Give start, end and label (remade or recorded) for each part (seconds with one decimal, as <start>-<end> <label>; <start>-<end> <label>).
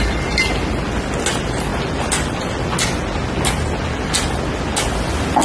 0.0-5.4 recorded